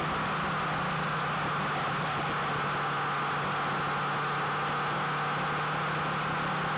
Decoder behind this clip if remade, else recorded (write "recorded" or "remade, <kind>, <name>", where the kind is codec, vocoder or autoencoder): recorded